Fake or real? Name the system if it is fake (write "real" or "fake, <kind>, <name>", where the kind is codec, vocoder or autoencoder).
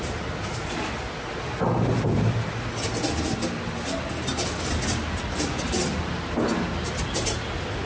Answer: real